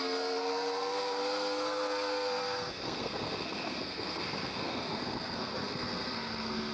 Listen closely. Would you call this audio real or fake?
fake